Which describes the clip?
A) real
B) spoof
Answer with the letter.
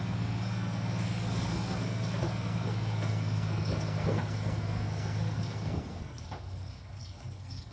B